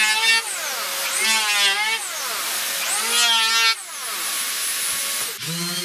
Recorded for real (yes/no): yes